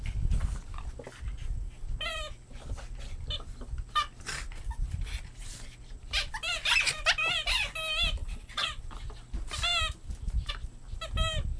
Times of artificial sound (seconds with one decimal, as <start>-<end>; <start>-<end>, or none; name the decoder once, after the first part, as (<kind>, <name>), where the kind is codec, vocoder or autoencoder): 8.2-8.8 (vocoder, WaveNeXt)